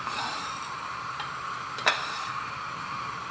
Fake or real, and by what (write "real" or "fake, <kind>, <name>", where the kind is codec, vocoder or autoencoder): fake, vocoder, BigVGAN v2